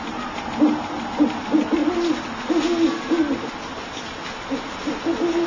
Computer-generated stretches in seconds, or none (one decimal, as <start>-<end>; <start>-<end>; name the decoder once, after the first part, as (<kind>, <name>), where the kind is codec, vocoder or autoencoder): none